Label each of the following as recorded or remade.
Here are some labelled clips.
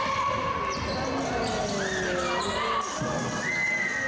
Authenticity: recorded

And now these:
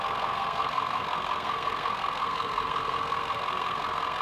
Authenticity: remade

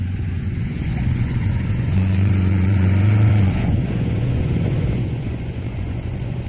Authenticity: remade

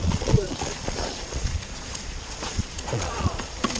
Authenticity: remade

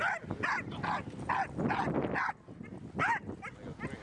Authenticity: recorded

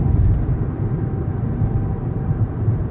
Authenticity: remade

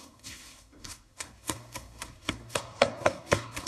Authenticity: remade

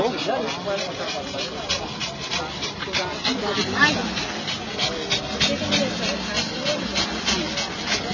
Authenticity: recorded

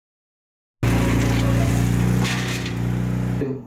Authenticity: recorded